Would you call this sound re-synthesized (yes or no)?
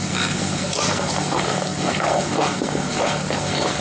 yes